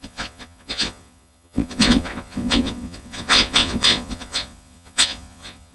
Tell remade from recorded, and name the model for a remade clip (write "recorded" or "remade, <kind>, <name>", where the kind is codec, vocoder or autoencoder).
remade, vocoder, Vocos